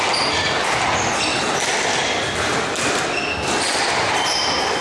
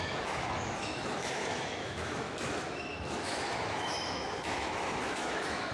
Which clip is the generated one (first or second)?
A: second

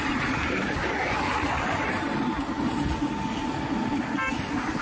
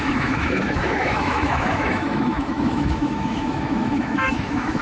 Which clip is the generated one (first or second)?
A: second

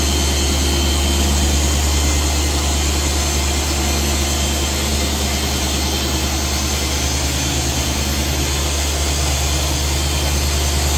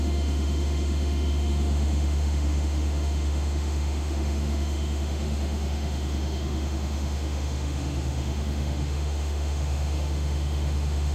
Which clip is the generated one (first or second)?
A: second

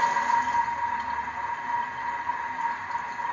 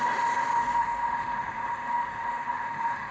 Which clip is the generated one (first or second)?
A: second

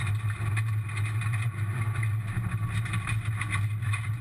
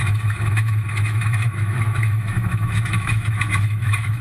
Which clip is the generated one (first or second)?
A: second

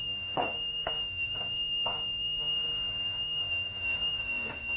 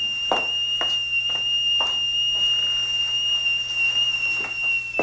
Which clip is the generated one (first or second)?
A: first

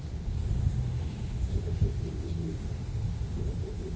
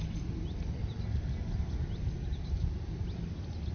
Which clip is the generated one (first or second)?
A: first